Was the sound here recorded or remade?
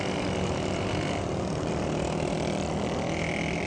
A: recorded